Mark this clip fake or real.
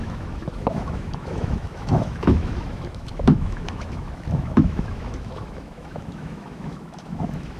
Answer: fake